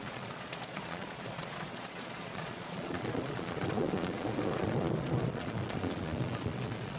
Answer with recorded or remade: remade